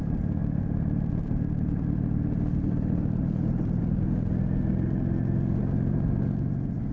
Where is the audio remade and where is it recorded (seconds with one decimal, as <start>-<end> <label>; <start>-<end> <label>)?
0.0-0.4 recorded; 0.4-3.8 remade; 3.8-6.9 recorded